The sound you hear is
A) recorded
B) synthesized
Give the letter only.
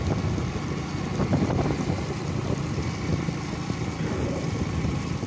A